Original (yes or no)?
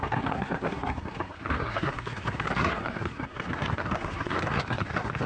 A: no